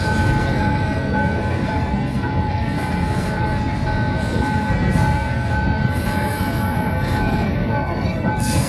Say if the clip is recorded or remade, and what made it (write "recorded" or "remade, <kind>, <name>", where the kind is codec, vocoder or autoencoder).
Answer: remade, codec, SNAC